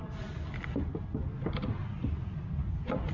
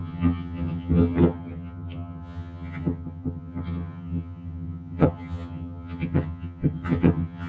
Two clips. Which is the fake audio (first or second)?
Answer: second